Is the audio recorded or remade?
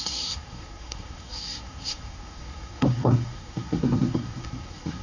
remade